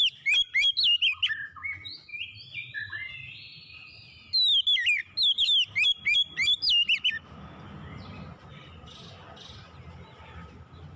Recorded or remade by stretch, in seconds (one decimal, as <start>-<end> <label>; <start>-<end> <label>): 0.0-11.0 recorded